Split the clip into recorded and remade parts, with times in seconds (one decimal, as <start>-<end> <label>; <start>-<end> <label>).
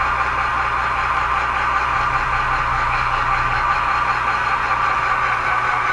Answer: 0.0-2.7 recorded; 2.7-3.7 remade; 3.7-5.9 recorded